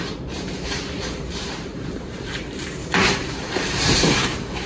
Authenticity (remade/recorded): remade